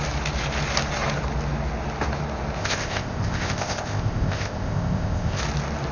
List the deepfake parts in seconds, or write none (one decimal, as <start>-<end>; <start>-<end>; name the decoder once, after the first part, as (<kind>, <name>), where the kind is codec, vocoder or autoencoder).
2.6-5.4 (codec, ZipCodec)